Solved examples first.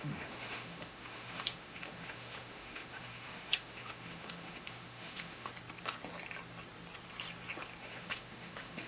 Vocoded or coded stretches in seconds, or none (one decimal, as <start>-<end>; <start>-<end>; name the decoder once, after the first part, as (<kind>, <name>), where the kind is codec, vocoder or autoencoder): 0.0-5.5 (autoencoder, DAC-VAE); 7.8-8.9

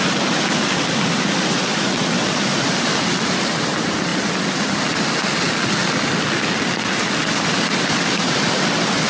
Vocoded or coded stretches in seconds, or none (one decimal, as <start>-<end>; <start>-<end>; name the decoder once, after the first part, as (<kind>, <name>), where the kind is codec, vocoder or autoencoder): none

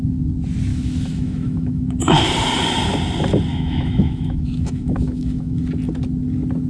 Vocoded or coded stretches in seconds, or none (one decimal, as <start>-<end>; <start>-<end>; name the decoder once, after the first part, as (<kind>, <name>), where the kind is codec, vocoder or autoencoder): 0.7-2.0 (autoencoder, DAC-VAE); 3.5-5.6

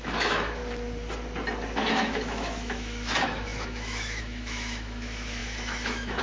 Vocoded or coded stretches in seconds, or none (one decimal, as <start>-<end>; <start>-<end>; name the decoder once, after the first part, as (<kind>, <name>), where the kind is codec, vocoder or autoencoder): 0.0-0.6 (autoencoder, DAC-VAE); 1.9-6.2

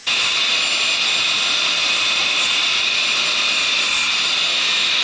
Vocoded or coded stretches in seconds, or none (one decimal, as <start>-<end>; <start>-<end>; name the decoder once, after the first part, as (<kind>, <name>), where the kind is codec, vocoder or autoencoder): none

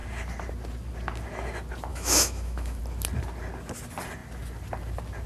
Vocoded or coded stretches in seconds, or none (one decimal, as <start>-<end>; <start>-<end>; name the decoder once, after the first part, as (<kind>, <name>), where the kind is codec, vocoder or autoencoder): 1.9-2.8 (autoencoder, DAC-VAE)

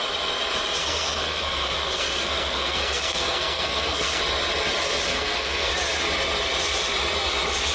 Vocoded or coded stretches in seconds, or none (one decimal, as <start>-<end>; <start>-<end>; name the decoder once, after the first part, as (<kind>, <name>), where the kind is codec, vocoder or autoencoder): 0.8-4.2 (codec, SNAC); 5.1-5.7

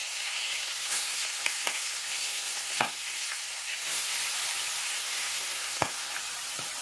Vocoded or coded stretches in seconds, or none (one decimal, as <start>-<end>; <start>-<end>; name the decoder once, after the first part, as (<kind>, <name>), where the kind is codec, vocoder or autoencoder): 0.0-4.1 (codec, SNAC); 4.8-6.1